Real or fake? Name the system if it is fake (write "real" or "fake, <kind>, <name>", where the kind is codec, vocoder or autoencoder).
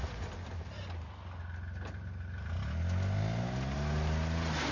real